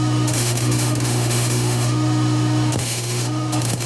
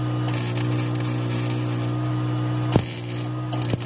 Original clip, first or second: second